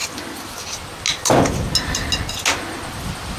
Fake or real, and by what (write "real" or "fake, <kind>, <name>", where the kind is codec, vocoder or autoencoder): real